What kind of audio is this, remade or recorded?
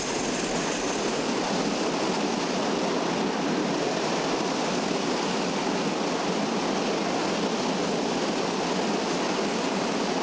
recorded